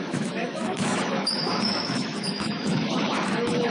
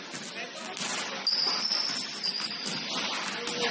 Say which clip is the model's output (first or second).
first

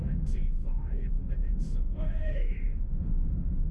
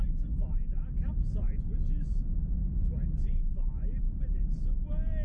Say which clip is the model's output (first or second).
first